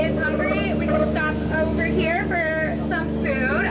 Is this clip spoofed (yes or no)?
no